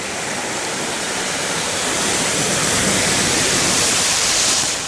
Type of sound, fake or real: fake